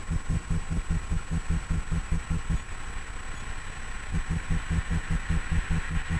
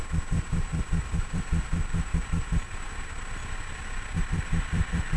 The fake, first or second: second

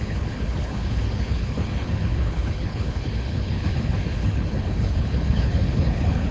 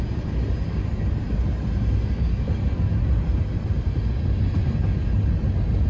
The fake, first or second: first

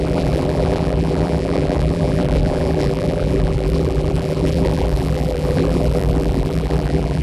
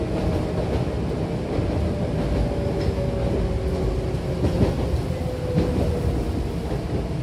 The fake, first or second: first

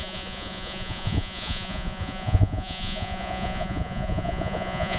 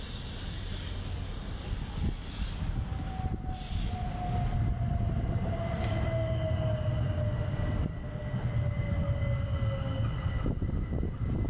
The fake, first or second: first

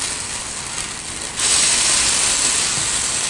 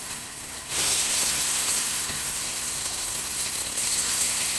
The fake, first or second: second